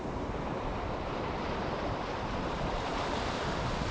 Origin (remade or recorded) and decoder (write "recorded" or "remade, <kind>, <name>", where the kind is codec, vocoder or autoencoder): remade, vocoder, BigVGAN v2